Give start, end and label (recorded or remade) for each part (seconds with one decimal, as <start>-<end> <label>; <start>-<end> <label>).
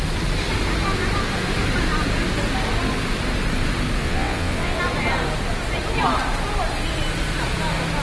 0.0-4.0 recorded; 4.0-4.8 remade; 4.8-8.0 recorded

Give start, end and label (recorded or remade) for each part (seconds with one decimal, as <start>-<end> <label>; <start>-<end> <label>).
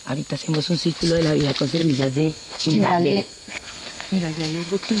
0.0-1.8 recorded; 1.8-5.0 remade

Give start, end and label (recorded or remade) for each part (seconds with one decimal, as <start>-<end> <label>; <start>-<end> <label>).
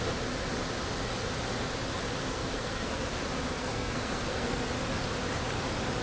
0.0-2.2 recorded; 2.2-3.1 remade; 3.1-3.6 recorded; 3.6-4.7 remade; 4.7-6.0 recorded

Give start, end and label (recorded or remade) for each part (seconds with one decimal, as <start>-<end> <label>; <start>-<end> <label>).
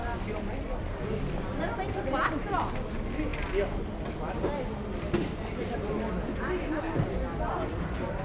0.0-8.2 recorded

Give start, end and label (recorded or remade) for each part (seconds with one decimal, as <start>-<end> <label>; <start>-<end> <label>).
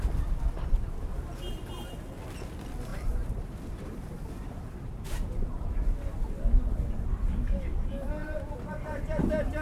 0.0-2.9 recorded; 2.9-6.4 remade; 6.4-8.2 recorded; 8.2-8.7 remade; 8.7-9.6 recorded